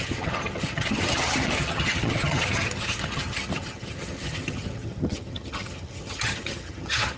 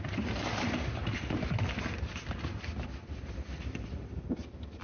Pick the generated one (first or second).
first